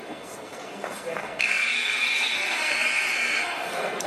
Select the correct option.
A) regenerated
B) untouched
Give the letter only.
A